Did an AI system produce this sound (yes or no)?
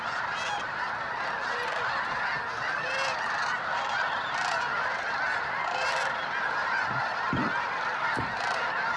no